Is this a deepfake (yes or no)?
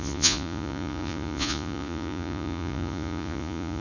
yes